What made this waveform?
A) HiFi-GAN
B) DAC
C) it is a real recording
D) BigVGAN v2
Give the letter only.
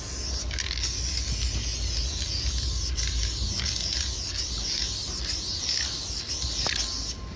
C